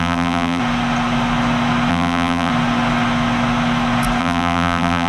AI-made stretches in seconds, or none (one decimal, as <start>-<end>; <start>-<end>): 0.0-0.6; 1.9-2.5; 4.2-5.1

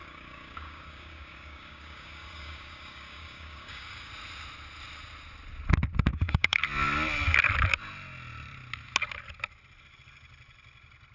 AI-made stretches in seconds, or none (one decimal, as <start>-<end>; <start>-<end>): 0.0-4.1; 6.1-6.6

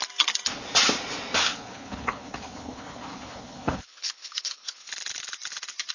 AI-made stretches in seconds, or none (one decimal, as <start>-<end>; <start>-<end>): 1.4-4.9

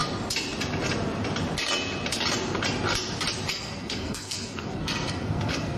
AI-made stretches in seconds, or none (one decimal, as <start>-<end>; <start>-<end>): 3.5-5.8

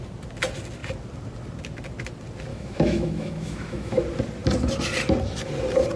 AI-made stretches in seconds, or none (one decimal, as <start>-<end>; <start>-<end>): 2.5-4.0